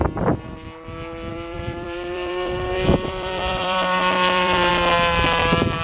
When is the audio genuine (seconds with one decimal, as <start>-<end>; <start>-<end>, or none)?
0.0-1.3; 4.7-5.8